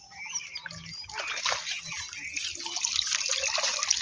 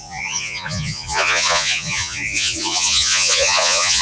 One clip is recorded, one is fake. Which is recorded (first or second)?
first